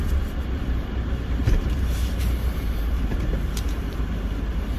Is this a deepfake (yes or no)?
yes